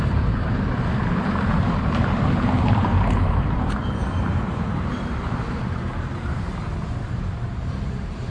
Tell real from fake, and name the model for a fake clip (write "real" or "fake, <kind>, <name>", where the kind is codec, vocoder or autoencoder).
fake, vocoder, BigVGAN v2